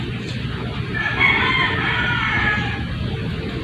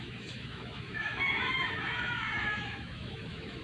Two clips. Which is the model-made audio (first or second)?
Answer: second